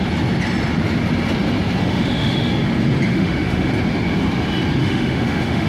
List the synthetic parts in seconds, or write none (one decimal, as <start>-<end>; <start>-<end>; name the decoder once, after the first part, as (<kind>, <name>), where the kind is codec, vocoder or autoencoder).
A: 1.8-2.5 (autoencoder, DAC-VAE); 3.1-3.7; 4.8-5.7